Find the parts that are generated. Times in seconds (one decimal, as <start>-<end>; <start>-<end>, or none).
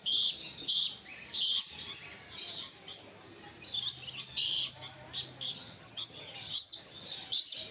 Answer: 5.5-7.3